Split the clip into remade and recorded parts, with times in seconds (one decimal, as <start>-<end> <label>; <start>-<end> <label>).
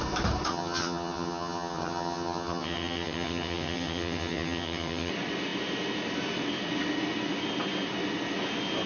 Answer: 0.0-0.5 recorded; 0.5-5.1 remade; 5.1-8.9 recorded